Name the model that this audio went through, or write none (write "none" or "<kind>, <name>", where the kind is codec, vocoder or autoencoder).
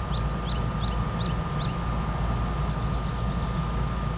none